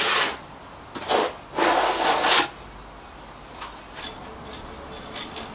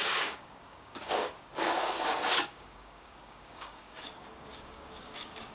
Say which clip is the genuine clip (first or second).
first